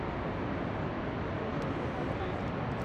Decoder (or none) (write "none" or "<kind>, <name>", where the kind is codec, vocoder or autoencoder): none